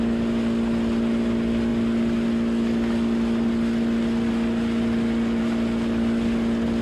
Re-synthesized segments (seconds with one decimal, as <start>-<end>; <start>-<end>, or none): none